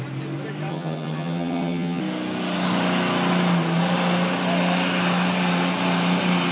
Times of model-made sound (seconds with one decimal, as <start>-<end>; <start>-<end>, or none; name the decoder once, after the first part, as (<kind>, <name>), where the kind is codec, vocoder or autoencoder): 0.7-2.0 (vocoder, HiFi-GAN)